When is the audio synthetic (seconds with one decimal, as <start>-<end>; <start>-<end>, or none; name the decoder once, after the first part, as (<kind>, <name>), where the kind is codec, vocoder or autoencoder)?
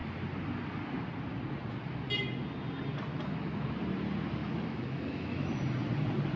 3.1-3.7 (autoencoder, DAC-VAE); 4.4-5.6